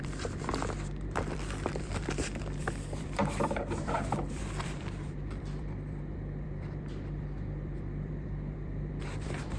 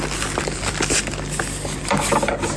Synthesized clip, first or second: first